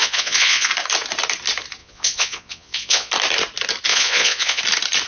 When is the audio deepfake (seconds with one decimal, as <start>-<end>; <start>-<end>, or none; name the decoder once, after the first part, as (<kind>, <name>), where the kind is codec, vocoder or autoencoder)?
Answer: 0.0-0.7 (vocoder, Vocos); 1.8-3.1; 3.9-4.6